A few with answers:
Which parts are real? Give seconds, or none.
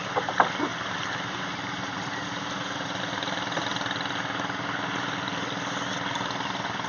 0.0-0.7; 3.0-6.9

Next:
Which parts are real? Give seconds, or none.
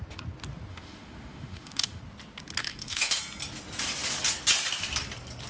0.0-0.7; 2.0-2.6; 3.2-5.5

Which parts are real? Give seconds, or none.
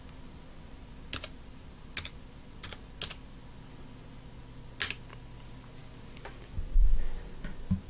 0.0-7.9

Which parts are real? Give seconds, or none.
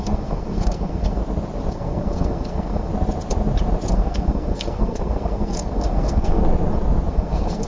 1.2-1.7; 2.9-3.9; 6.4-7.1